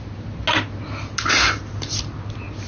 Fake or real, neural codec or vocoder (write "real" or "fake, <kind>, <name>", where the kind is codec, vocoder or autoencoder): real